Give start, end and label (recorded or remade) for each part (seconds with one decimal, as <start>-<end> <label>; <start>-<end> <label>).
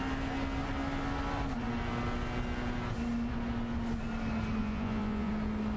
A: 0.0-4.6 recorded; 4.6-5.3 remade; 5.3-5.8 recorded